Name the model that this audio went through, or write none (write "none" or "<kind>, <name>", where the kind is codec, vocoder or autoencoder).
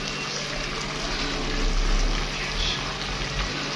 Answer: none